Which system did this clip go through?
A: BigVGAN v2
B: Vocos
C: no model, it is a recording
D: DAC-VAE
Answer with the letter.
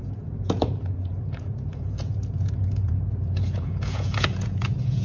B